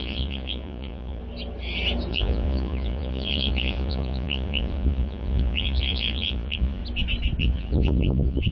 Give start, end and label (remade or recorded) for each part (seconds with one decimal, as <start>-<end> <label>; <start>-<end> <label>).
0.0-1.2 remade; 1.2-2.1 recorded; 2.1-6.8 remade; 6.8-7.4 recorded; 7.4-8.5 remade